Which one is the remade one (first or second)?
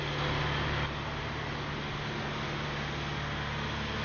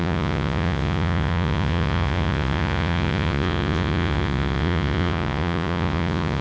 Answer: second